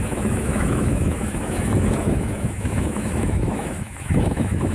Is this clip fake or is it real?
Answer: fake